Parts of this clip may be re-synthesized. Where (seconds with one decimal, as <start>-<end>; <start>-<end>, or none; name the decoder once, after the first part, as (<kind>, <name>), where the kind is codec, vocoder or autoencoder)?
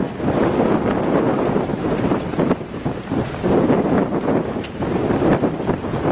1.7-3.4 (vocoder, BigVGAN v2)